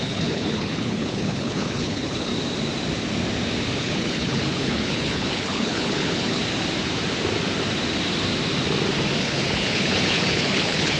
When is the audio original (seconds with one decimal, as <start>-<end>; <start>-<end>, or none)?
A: 2.3-3.8; 6.4-9.2